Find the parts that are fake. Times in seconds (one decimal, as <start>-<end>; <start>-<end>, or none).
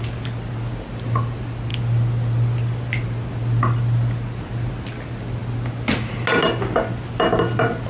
none